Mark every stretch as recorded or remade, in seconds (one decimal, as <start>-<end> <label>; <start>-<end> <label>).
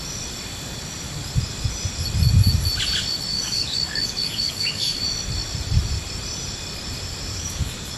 0.0-3.3 recorded; 3.3-5.0 remade; 5.0-7.3 recorded; 7.3-8.0 remade